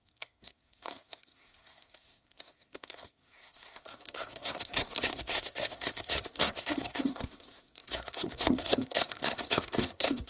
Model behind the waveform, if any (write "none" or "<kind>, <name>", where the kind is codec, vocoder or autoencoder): codec, SNAC